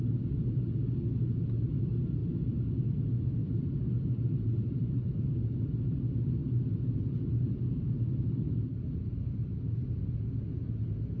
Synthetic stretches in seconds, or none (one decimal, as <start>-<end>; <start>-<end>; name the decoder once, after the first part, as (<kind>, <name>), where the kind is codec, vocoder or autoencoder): 3.4-5.4 (vocoder, BigVGAN v2); 6.4-10.2

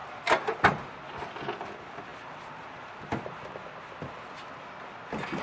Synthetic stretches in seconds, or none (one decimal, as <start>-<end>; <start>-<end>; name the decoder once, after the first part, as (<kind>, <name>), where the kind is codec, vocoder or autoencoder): 0.0-1.0 (vocoder, BigVGAN v2)